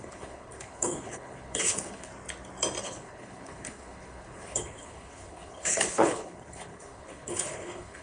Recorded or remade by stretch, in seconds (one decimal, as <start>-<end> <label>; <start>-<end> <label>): 0.0-2.1 remade; 2.1-2.8 recorded; 2.8-8.0 remade